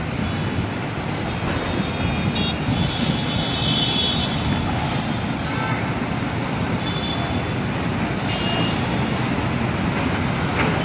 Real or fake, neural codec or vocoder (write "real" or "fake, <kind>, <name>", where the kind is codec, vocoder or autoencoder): real